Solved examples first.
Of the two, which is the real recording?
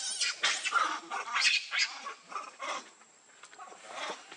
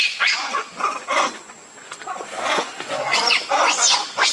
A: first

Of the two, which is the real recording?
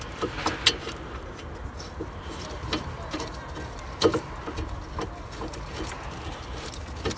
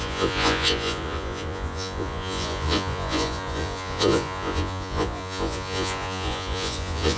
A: first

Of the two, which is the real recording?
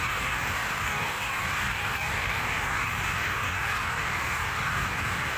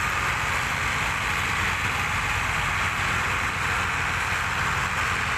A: second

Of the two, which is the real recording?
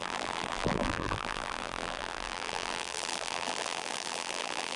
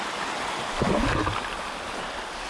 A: second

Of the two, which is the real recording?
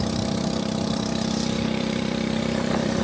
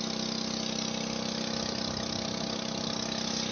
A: second